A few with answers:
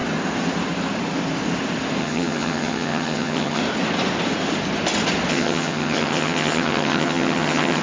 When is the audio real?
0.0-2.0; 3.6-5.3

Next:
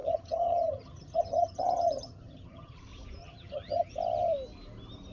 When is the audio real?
2.8-3.2; 3.9-5.1

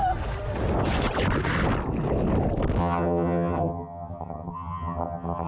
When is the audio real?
0.0-2.8

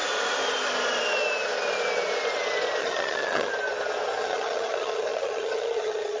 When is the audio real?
0.0-2.8; 3.5-4.2

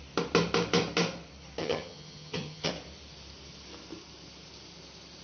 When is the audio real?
0.0-1.6; 2.7-5.2

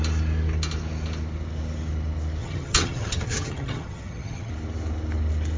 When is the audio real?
0.0-2.4; 4.5-5.6

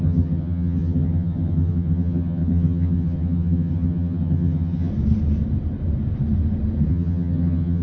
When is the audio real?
4.9-6.9

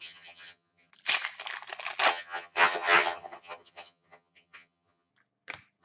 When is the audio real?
0.9-2.1; 5.1-5.8